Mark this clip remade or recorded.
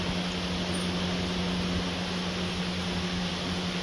recorded